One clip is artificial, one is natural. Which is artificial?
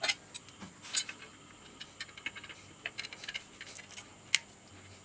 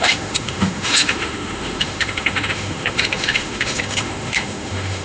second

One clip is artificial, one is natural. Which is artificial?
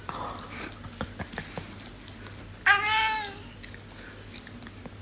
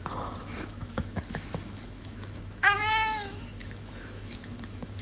second